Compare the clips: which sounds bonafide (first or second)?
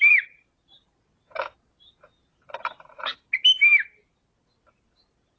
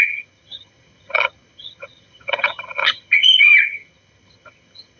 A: first